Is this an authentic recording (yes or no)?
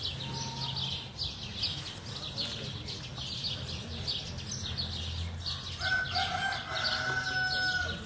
yes